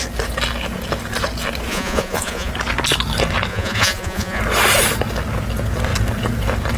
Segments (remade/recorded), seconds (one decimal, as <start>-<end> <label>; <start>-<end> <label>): 0.0-1.7 recorded; 1.7-2.5 remade; 2.5-3.5 recorded; 3.5-4.4 remade; 4.4-6.8 recorded

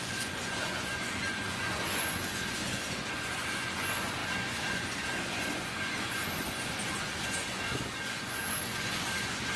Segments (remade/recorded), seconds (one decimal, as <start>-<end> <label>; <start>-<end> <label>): 0.0-9.6 remade

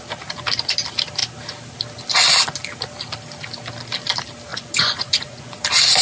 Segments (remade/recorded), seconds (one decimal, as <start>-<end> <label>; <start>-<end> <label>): 0.0-4.5 recorded; 4.5-5.6 remade; 5.6-6.0 recorded

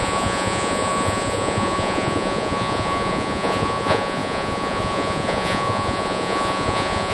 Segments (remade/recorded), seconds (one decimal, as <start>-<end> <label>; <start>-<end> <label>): 0.0-7.1 remade

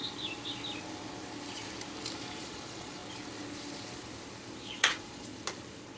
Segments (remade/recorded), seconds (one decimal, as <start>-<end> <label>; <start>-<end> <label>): 0.0-2.4 recorded; 2.4-3.0 remade; 3.0-4.6 recorded; 4.6-5.3 remade; 5.3-6.0 recorded

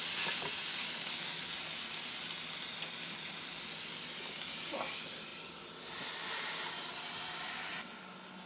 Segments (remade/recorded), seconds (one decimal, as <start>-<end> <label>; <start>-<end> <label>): 0.0-8.5 recorded

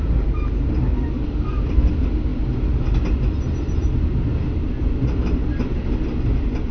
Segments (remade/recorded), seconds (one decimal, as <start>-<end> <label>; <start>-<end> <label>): 0.0-6.7 recorded

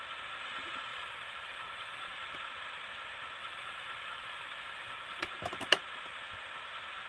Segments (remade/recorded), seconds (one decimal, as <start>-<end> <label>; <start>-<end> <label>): 0.0-0.9 recorded; 0.9-2.1 remade; 2.1-3.4 recorded; 3.4-5.3 remade; 5.3-7.1 recorded